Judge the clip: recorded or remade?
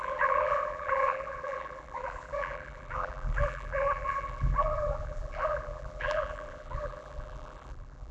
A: remade